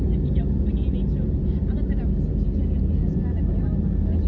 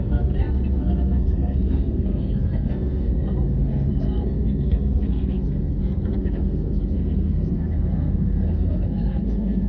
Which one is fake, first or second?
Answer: second